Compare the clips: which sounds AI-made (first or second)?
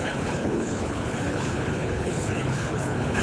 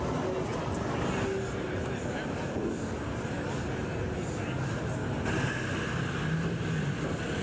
first